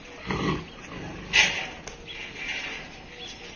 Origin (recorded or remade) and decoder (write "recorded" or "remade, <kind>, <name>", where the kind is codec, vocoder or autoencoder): recorded